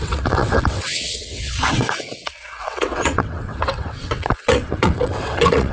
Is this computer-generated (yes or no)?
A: yes